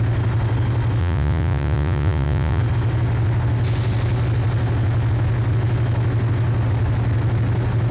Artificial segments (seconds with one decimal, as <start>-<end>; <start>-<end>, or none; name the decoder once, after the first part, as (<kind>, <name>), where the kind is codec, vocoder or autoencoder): 1.0-2.6 (vocoder, Vocos)